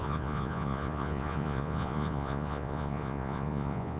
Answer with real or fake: fake